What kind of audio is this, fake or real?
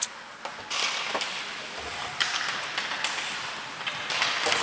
real